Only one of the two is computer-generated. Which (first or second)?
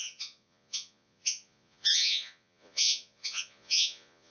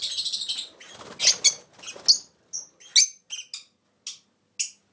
first